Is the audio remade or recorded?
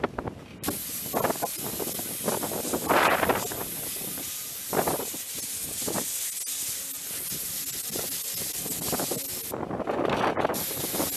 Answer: recorded